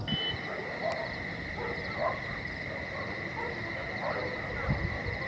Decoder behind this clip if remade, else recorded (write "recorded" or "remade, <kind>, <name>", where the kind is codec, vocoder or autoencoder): recorded